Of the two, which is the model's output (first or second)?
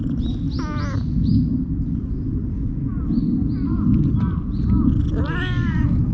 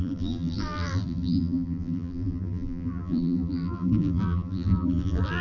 second